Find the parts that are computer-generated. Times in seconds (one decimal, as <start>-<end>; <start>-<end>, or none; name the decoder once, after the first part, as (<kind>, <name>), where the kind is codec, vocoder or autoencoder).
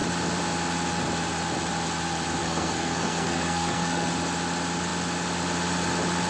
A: 2.4-4.1 (codec, SNAC)